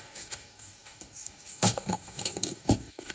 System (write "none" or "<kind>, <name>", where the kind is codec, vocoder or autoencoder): codec, DAC